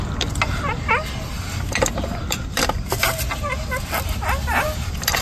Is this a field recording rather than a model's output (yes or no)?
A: yes